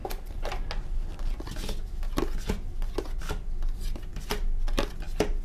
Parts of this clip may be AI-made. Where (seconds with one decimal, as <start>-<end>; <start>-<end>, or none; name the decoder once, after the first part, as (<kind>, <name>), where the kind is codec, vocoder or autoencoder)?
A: none